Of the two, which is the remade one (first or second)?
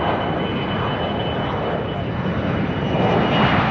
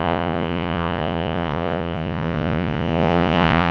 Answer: second